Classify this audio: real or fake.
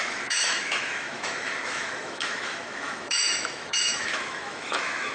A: fake